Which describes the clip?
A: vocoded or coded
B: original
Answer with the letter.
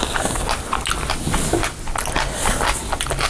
B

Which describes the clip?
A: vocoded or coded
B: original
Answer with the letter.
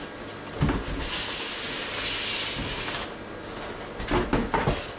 B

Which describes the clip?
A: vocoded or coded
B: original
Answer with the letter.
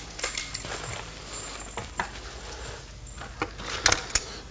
B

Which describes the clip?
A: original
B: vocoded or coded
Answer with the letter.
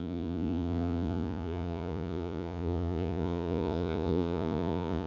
B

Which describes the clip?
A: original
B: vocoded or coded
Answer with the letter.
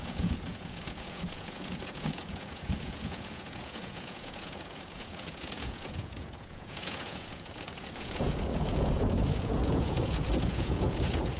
B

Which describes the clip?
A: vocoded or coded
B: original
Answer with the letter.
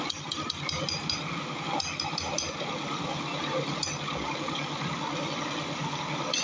B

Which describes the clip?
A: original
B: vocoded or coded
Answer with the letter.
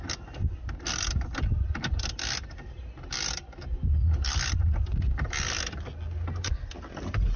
A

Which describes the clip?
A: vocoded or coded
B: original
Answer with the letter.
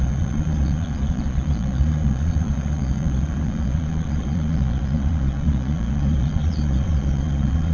A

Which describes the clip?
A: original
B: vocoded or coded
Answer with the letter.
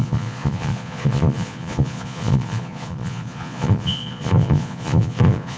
B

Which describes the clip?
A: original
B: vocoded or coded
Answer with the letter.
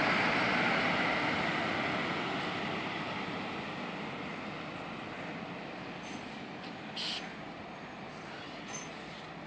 A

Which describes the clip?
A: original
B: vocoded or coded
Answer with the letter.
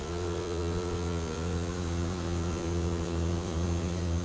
B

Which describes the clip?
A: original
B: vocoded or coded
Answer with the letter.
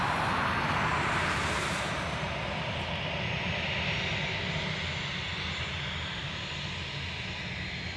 A